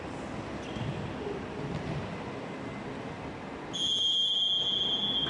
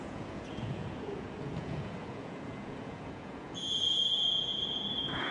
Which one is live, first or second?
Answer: first